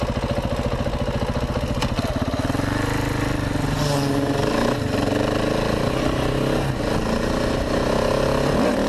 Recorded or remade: recorded